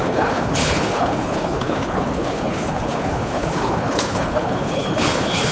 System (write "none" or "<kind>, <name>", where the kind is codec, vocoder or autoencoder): codec, HILCodec